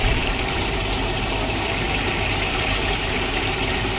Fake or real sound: fake